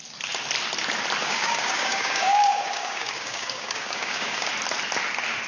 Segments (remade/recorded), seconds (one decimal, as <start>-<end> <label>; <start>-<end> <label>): 0.0-1.2 recorded; 1.2-4.5 remade; 4.5-5.5 recorded